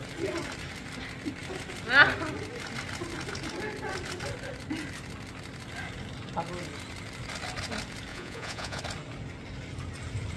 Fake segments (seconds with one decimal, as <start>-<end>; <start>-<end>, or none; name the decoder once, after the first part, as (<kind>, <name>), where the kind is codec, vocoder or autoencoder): 8.1-8.8 (vocoder, Vocos)